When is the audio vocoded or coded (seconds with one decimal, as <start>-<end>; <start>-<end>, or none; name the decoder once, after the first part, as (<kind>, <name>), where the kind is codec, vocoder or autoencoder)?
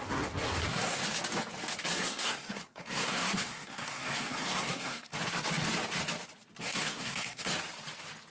0.0-1.0 (codec, SNAC); 2.0-5.1; 6.6-7.5